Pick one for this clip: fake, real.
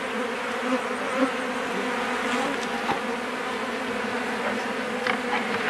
real